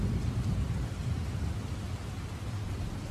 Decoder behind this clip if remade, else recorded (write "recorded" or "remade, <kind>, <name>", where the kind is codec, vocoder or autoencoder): recorded